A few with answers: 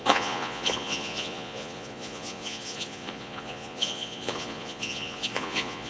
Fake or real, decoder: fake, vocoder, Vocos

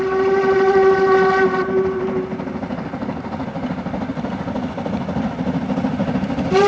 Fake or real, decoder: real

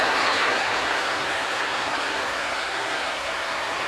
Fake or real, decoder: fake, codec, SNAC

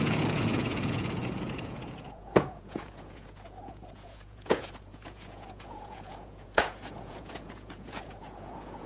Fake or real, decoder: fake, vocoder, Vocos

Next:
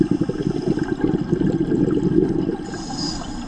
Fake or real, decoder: real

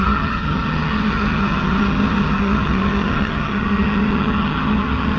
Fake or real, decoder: fake, vocoder, HiFi-GAN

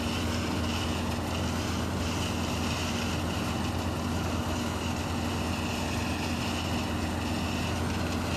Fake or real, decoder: real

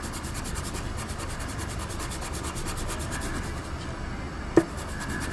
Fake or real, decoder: real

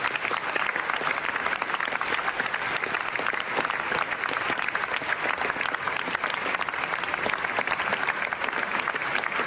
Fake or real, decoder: real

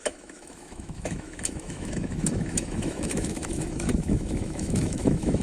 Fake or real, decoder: fake, autoencoder, DAC-VAE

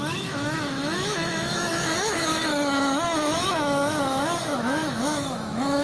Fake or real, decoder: fake, autoencoder, DAC-VAE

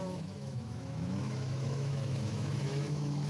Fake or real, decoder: fake, autoencoder, DAC-VAE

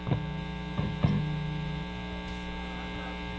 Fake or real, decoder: real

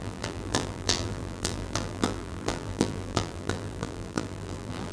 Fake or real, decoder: fake, vocoder, BigVGAN v2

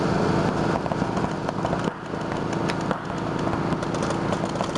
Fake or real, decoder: real